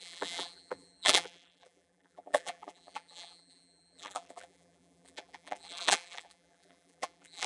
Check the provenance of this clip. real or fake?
fake